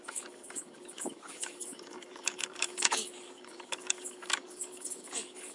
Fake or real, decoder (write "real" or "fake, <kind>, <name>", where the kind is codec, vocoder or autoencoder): fake, codec, DAC